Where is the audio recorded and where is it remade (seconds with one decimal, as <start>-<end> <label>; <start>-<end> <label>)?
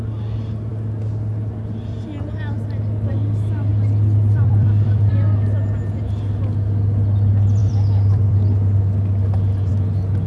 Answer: 0.0-3.7 recorded; 3.7-5.1 remade; 5.1-7.6 recorded; 7.6-9.7 remade; 9.7-10.3 recorded